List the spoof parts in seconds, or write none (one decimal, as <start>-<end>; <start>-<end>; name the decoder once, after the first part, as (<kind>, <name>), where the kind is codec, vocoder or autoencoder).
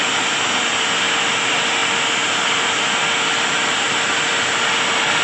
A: none